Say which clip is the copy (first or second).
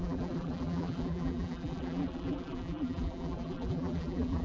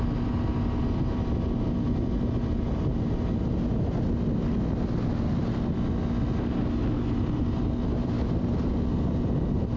first